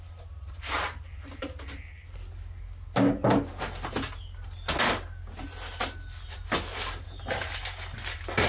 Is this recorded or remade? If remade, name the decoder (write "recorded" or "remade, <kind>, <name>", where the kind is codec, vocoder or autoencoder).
recorded